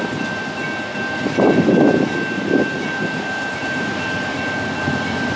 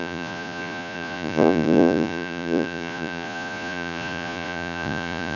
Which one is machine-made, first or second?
second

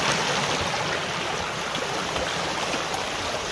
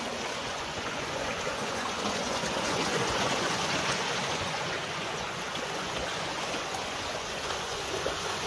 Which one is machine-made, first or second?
second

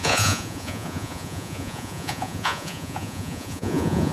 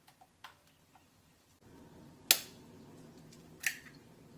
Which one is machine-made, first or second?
first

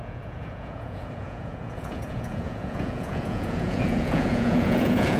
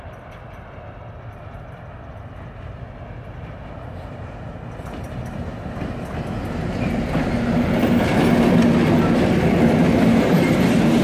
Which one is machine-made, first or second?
first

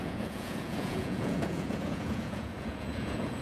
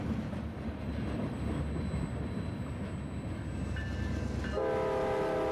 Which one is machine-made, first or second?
first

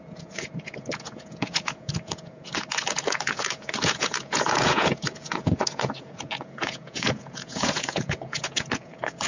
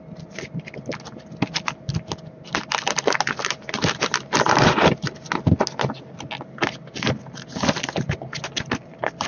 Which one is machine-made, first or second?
first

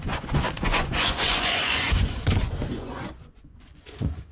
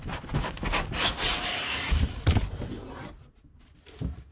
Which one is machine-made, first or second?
first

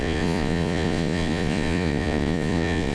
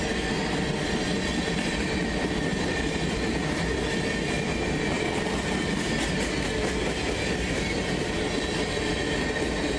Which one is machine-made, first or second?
first